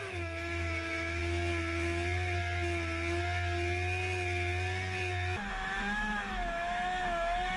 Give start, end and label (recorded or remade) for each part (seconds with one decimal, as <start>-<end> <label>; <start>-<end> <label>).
0.0-1.2 remade; 1.2-5.5 recorded; 5.5-7.6 remade